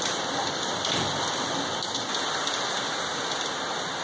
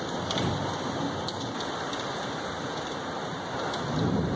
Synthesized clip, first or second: second